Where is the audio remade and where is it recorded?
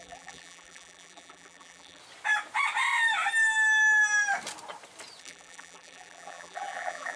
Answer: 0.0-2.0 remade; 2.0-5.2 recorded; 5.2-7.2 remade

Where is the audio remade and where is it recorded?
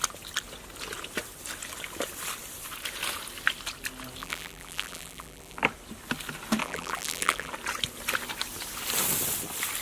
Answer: 0.0-4.2 recorded; 4.2-5.6 remade; 5.6-6.6 recorded; 6.6-7.5 remade; 7.5-9.8 recorded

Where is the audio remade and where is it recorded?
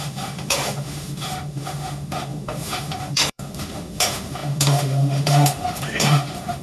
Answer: 0.0-6.6 remade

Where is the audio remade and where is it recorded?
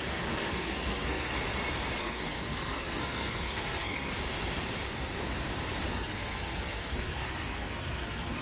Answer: 0.0-1.3 remade; 1.3-2.0 recorded; 2.0-4.1 remade; 4.1-5.9 recorded; 5.9-8.4 remade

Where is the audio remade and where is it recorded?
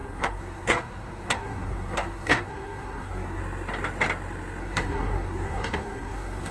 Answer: 0.0-3.4 remade; 3.4-4.6 recorded; 4.6-6.5 remade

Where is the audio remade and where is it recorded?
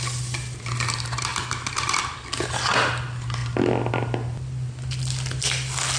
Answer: 0.0-6.0 recorded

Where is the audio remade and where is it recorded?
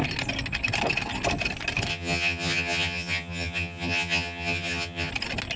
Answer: 0.0-1.9 recorded; 1.9-5.1 remade; 5.1-5.6 recorded